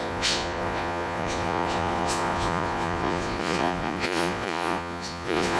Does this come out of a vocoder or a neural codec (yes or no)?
yes